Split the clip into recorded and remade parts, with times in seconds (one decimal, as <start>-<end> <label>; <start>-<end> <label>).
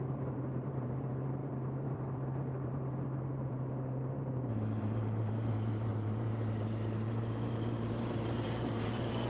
0.0-9.3 remade